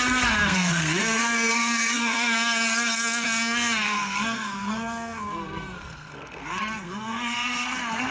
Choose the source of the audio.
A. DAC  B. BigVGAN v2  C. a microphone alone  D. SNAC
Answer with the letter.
D